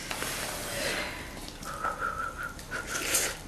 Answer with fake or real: real